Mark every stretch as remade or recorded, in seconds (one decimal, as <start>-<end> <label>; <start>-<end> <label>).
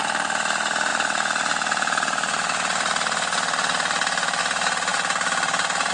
0.0-0.9 recorded; 0.9-4.4 remade; 4.4-5.9 recorded